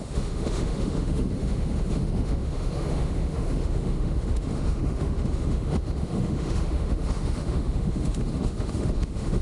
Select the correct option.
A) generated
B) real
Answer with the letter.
A